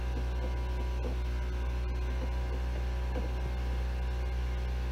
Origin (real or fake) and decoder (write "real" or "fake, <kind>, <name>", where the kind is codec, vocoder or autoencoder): real